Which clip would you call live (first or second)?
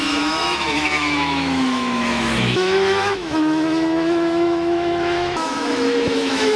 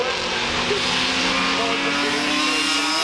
second